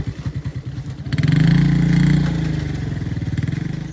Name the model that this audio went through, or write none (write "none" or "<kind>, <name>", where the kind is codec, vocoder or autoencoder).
none